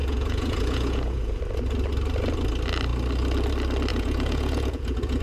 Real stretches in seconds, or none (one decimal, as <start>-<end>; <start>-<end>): 1.4-3.9